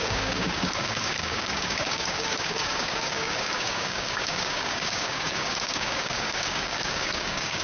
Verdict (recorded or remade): remade